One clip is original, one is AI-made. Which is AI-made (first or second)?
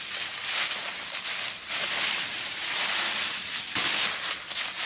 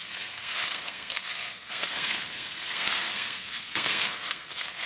second